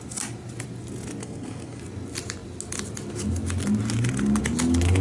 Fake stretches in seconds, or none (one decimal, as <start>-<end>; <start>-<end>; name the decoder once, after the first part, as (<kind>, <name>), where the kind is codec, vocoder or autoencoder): 1.2-1.8 (codec, SNAC)